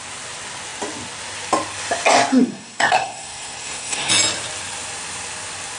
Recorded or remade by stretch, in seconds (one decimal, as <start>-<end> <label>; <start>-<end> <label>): 0.0-2.3 recorded; 2.3-4.1 remade; 4.1-5.8 recorded